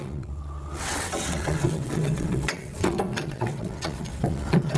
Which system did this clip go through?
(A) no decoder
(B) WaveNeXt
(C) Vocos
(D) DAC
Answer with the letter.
B